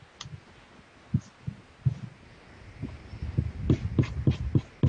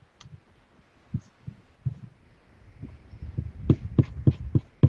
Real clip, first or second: first